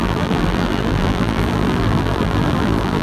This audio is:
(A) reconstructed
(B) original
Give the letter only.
A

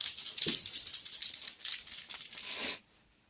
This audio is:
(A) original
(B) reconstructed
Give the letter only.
A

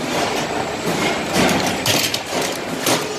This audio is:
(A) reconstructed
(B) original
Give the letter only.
B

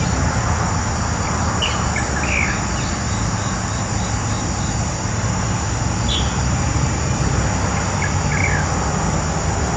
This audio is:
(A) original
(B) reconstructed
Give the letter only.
A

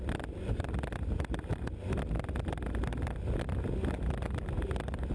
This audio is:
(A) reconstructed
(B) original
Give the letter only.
B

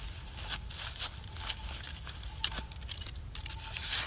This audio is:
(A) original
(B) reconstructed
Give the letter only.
A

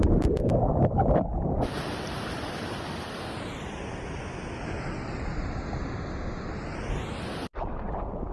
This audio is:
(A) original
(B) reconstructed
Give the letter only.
B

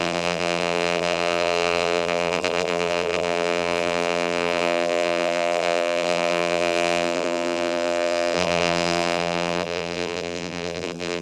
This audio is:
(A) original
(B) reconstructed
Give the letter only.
B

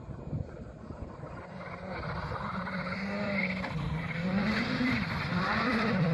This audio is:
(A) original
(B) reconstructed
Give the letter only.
B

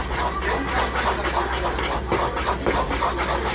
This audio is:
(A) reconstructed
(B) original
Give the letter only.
B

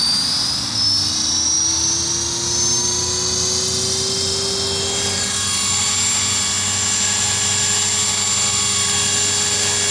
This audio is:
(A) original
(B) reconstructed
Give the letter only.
A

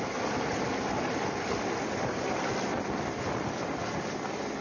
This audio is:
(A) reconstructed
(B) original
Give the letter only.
A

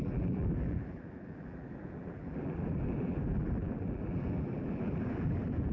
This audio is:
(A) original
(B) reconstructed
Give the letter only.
B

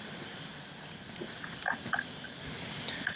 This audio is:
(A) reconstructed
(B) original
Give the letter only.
B